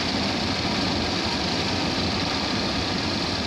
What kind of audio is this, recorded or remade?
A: recorded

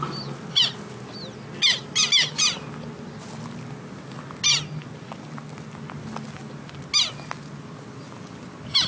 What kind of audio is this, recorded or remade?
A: recorded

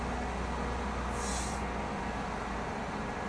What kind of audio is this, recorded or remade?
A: recorded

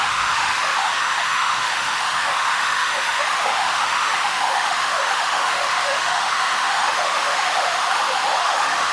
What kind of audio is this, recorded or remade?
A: remade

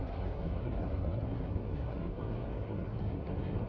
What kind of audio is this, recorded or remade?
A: remade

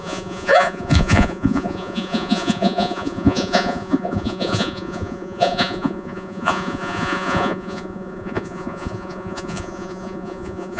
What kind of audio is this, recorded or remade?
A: remade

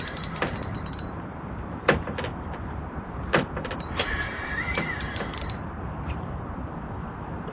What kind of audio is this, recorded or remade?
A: remade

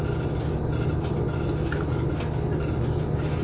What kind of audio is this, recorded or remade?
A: recorded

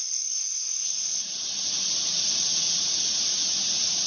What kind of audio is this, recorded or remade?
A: recorded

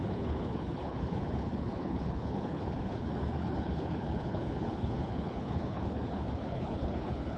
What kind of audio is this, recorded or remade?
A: remade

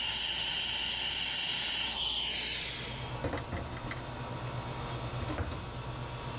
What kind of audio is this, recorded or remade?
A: recorded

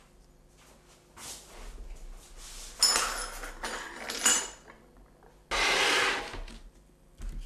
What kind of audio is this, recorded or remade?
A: recorded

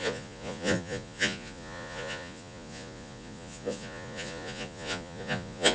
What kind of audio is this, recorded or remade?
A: remade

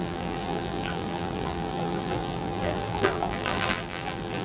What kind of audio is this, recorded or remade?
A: remade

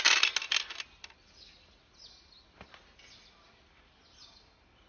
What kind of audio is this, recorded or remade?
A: recorded